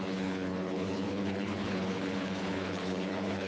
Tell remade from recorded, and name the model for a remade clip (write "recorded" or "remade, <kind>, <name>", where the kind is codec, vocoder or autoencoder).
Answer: remade, codec, HILCodec